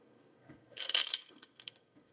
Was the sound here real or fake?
fake